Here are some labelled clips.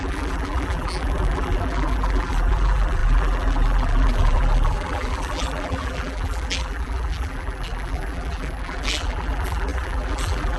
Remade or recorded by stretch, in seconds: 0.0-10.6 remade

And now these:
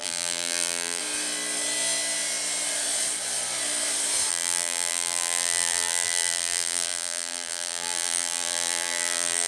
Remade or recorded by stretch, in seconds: 0.0-1.0 remade; 1.0-4.3 recorded; 4.3-9.5 remade

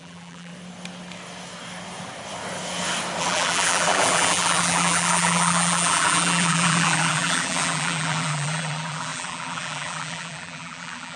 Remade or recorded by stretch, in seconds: 0.0-0.5 remade; 0.5-3.2 recorded; 3.2-11.2 remade

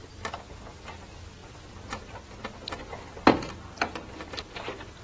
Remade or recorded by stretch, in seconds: 0.0-5.0 recorded

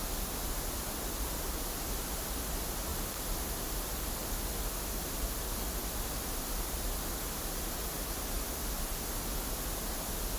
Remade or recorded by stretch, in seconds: 0.0-2.9 recorded; 2.9-4.0 remade; 4.0-10.4 recorded

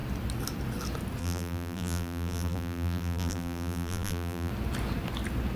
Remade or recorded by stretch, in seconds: 0.0-1.2 recorded; 1.2-4.5 remade; 4.5-5.6 recorded

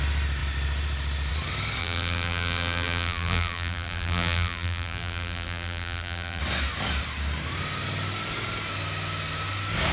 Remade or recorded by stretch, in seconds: 0.0-1.8 recorded; 1.8-6.4 remade; 6.4-9.9 recorded

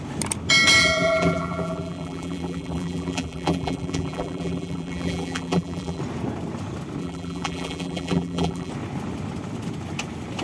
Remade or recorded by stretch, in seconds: 0.0-0.8 recorded; 0.8-6.0 remade; 6.0-7.0 recorded; 7.0-8.7 remade; 8.7-10.4 recorded